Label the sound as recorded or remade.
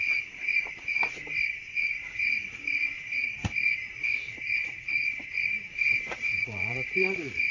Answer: remade